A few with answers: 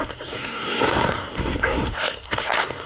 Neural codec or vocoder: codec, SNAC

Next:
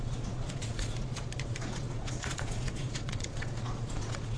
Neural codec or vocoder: vocoder, Vocos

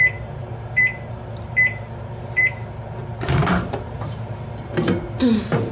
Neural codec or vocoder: vocoder, BigVGAN v2